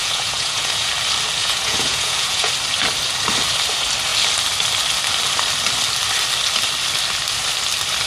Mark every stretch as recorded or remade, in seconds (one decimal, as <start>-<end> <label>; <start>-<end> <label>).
0.0-0.9 remade; 0.9-1.4 recorded; 1.4-2.5 remade; 2.5-8.1 recorded